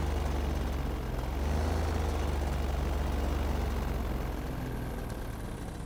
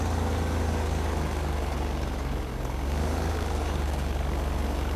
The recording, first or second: first